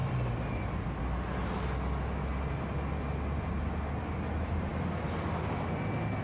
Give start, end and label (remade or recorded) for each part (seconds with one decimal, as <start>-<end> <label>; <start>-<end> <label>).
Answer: 0.0-1.0 remade; 1.0-6.2 recorded

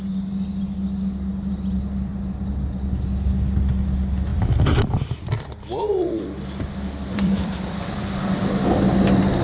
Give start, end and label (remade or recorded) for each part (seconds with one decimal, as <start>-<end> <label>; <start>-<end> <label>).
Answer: 0.0-4.3 recorded; 4.3-8.4 remade; 8.4-9.4 recorded

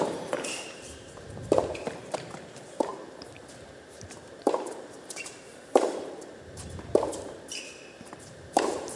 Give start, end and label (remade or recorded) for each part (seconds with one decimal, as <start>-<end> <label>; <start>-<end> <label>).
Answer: 0.0-9.0 remade

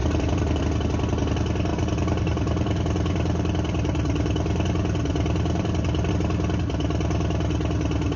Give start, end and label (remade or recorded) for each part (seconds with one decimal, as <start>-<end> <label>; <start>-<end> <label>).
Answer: 0.0-0.6 remade; 0.6-1.7 recorded; 1.7-6.1 remade; 6.1-8.2 recorded

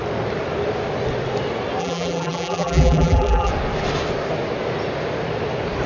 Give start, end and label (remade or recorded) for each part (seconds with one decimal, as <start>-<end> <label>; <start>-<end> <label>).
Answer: 0.0-1.8 recorded; 1.8-3.5 remade; 3.5-5.9 recorded